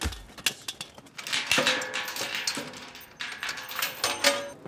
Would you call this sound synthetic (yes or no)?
no